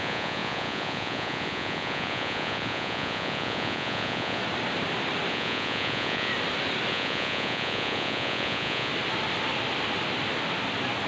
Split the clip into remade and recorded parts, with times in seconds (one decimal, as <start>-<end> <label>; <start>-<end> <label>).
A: 0.0-4.4 remade; 4.4-5.3 recorded; 5.3-6.3 remade; 6.3-6.9 recorded; 6.9-8.9 remade; 8.9-11.1 recorded